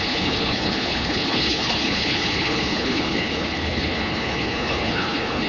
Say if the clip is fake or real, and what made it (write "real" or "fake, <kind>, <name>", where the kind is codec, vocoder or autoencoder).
fake, codec, HILCodec